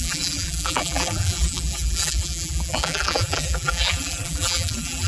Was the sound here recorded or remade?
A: remade